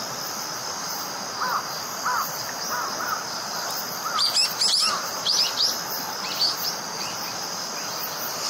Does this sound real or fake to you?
real